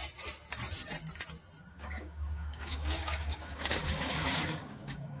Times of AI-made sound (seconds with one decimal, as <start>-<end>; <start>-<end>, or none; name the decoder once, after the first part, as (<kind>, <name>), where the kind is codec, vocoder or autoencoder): 1.7-5.2 (codec, DAC)